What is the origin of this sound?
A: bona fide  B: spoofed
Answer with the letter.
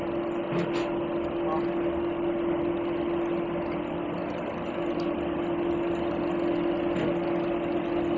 A